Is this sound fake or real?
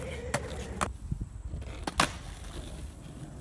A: real